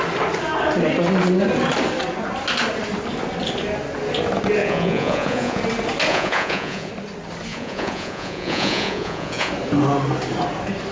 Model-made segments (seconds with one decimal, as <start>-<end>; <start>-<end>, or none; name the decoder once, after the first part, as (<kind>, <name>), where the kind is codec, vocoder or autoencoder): 4.6-5.6 (vocoder, Vocos); 6.1-6.9; 7.5-9.5